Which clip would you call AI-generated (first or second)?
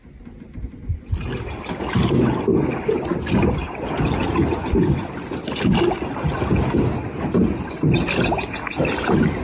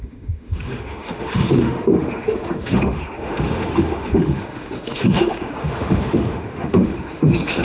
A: second